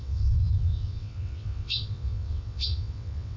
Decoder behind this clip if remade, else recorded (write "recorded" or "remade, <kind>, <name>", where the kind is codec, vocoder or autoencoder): remade, vocoder, WaveNeXt